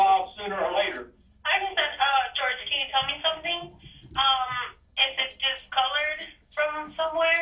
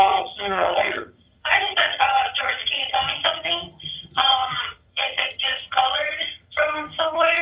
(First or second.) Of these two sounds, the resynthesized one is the second